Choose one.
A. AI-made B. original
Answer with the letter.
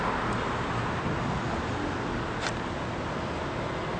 B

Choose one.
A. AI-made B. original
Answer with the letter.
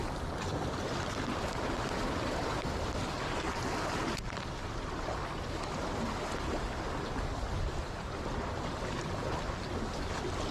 B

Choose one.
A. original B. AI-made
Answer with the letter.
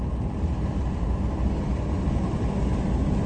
A